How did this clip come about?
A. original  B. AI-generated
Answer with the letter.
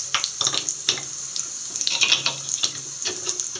A